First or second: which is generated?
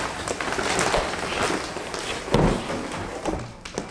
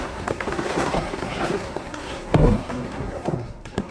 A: second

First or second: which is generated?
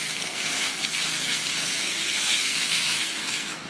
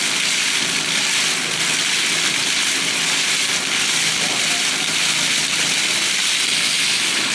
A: first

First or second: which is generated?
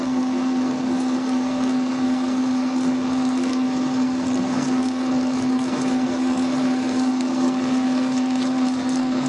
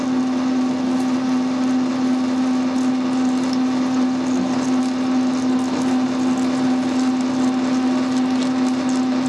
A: first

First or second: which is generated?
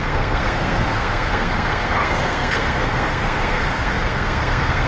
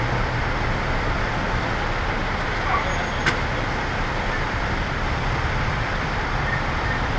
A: first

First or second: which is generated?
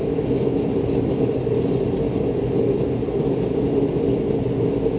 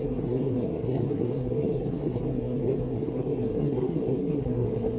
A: second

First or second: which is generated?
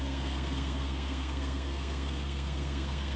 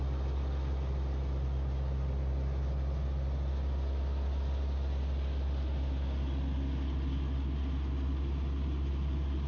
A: first